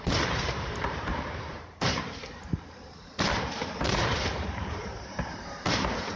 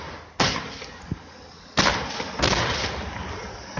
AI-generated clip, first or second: first